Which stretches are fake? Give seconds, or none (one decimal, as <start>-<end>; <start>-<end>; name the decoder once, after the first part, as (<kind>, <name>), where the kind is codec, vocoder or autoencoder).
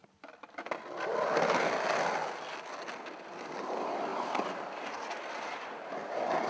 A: 0.0-0.7 (vocoder, BigVGAN v2); 4.1-5.1